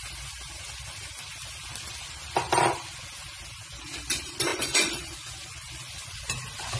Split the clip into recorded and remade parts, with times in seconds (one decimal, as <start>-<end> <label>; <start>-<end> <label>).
0.0-4.5 recorded; 4.5-6.2 remade; 6.2-6.8 recorded